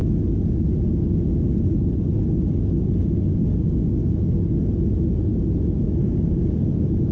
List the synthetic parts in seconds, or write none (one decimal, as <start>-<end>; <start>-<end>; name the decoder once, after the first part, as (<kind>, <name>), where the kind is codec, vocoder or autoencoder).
none

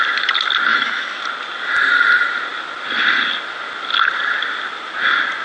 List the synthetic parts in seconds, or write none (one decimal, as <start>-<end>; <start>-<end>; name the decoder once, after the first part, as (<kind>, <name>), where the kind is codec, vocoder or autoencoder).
0.7-1.2 (autoencoder, DAC-VAE)

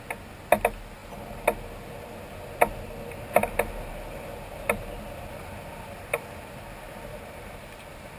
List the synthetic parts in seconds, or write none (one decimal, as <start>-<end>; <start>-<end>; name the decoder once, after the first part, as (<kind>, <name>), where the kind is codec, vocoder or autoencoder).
none

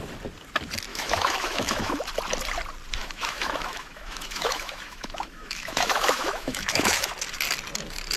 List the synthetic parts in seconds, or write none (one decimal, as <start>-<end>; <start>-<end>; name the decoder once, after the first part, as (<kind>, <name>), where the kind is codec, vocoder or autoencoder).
0.9-2.1 (autoencoder, DAC-VAE); 3.0-7.1

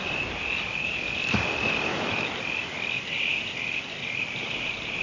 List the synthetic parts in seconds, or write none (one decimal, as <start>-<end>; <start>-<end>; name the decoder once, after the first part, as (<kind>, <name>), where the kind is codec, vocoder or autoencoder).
1.9-2.4 (autoencoder, DAC-VAE)